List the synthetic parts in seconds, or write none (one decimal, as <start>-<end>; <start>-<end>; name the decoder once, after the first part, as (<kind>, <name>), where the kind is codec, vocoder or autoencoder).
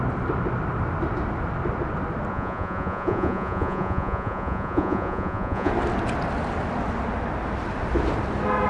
2.3-5.7 (vocoder, Vocos)